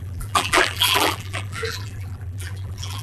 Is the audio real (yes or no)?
no